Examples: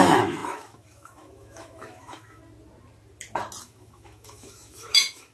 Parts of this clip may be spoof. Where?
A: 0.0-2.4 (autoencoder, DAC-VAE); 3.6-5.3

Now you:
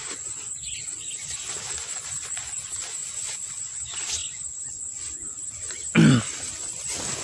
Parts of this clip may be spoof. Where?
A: 3.0-3.6 (vocoder, WaveNeXt)

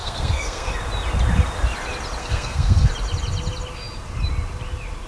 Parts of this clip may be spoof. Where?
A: 0.0-0.7 (codec, SNAC); 2.2-2.9

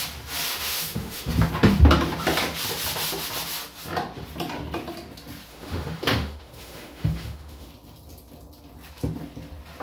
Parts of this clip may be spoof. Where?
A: 0.5-1.3 (autoencoder, DAC-VAE); 5.5-7.7

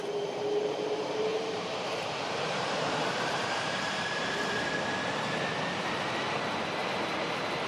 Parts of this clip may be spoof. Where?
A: 1.3-4.7 (vocoder, BigVGAN v2); 6.8-7.3